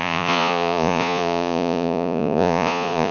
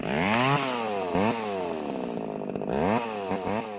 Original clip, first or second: second